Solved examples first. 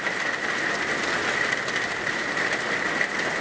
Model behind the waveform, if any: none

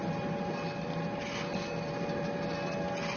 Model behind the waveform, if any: none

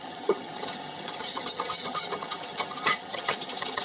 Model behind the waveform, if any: vocoder, HiFi-GAN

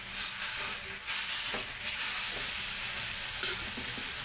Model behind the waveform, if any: none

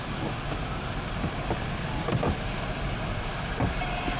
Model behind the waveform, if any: none